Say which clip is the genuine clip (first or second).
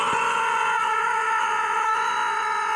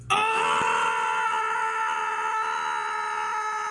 second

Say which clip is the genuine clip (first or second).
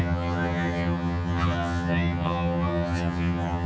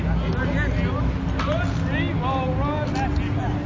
second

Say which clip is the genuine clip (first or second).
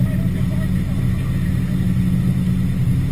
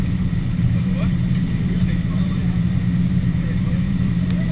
first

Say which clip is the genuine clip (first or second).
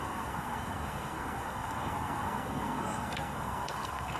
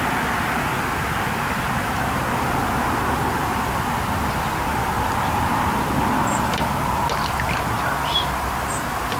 second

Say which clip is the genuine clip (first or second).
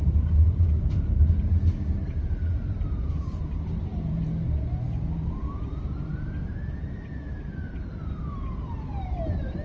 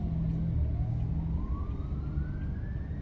second